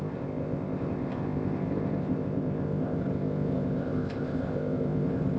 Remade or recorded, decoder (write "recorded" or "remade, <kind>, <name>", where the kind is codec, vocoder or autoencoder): remade, codec, ZipCodec